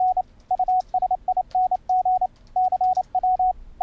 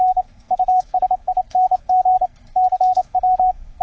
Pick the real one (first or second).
first